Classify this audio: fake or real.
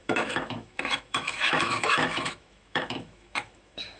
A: fake